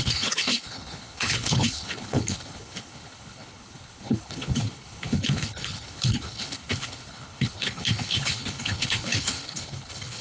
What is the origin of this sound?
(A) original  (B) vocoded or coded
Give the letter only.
B